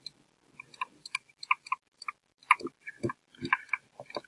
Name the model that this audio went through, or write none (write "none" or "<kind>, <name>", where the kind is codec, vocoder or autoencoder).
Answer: none